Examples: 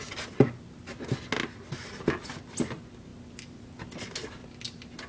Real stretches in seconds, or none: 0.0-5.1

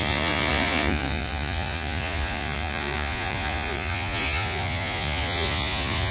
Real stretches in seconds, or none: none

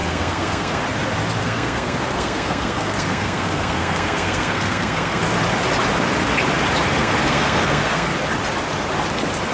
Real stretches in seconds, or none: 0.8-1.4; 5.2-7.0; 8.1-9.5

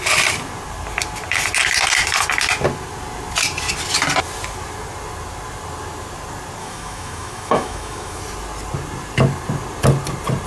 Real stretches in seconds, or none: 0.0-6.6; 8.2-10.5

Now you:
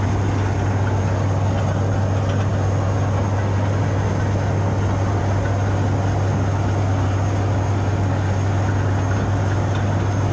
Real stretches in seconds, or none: 0.0-10.3

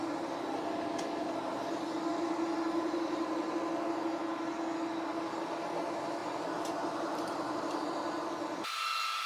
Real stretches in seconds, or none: 0.0-2.1; 3.6-6.2; 7.8-9.3